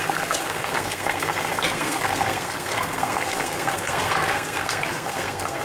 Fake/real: fake